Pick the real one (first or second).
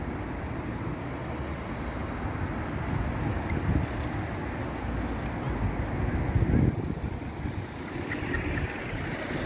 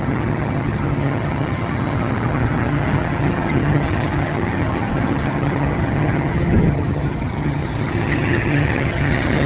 first